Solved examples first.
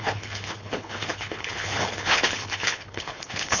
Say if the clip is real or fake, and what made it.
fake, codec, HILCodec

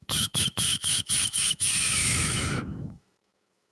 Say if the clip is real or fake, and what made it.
fake, autoencoder, DAC-VAE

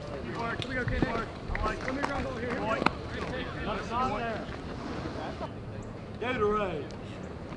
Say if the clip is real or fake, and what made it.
real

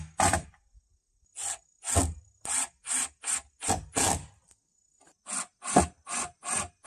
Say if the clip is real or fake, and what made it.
real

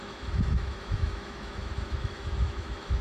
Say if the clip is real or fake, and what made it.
fake, autoencoder, DAC-VAE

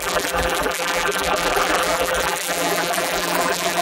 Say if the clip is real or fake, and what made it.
fake, vocoder, BigVGAN v2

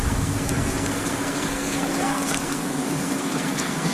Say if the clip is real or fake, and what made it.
fake, codec, SNAC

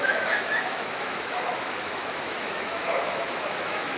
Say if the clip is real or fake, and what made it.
fake, autoencoder, DAC-VAE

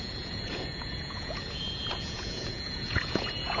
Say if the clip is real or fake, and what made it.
fake, vocoder, Vocos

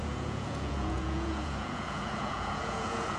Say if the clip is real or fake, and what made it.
fake, vocoder, Vocos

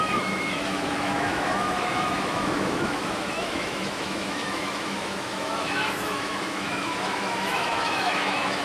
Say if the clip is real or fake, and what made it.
fake, autoencoder, DAC-VAE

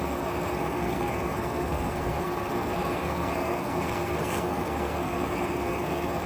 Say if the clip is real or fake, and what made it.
fake, codec, SNAC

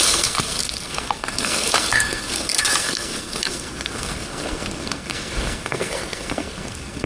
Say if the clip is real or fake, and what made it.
fake, codec, SNAC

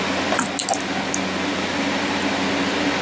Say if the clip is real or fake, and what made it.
real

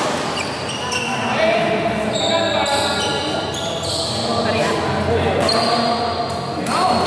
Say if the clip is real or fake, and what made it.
real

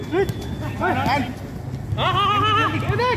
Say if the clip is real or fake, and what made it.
real